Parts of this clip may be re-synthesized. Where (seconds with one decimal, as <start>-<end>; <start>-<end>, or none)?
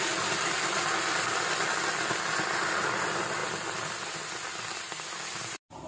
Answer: none